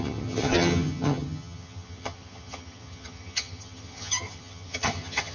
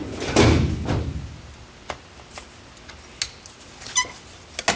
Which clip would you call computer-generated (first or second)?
first